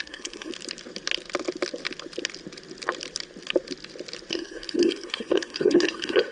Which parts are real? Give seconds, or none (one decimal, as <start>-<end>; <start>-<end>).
0.5-4.3